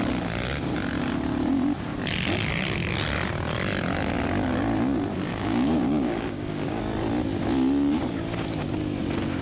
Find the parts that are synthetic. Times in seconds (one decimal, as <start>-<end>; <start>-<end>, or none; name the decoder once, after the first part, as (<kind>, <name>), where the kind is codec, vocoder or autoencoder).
5.3-6.8 (codec, DAC)